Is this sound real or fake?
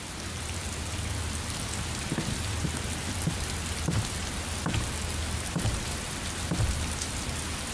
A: real